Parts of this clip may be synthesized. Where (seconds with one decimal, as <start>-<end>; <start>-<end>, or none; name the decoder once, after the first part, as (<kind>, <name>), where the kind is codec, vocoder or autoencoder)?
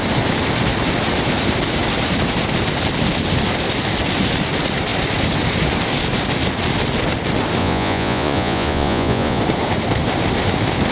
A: 7.6-9.4 (vocoder, Vocos)